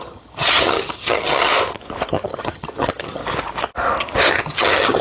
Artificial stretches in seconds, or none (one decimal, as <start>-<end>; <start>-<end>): 0.0-1.5; 2.1-3.2; 4.3-5.0